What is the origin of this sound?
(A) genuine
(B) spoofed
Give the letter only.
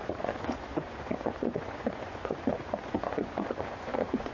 B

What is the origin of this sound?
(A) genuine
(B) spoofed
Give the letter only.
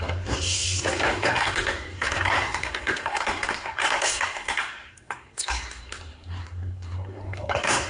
B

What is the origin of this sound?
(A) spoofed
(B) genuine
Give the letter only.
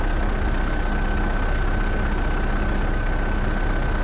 B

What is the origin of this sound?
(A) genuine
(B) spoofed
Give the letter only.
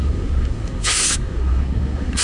B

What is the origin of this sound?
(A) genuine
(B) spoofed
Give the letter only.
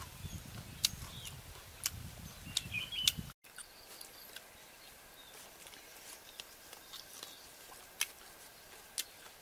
A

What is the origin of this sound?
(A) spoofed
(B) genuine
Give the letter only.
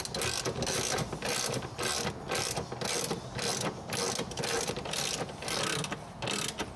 B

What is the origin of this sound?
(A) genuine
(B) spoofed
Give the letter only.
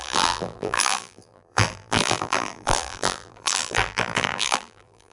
B